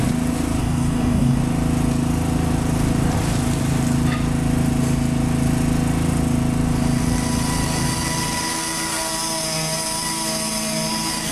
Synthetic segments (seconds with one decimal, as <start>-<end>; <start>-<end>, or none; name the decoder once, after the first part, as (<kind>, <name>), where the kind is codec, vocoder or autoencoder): 0.6-1.4 (codec, DAC)